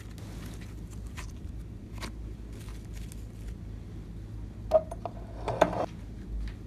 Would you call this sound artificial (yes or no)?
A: no